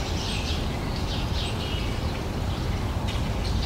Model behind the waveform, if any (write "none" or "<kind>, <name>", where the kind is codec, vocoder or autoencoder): vocoder, BigVGAN v2